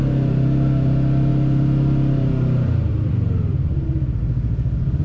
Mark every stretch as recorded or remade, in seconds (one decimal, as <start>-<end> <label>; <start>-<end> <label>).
0.0-5.0 recorded